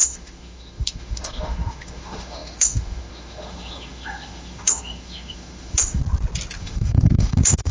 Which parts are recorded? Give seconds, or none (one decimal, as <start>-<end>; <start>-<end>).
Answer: 6.0-6.6